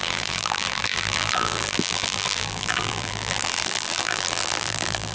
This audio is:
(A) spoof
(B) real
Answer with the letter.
A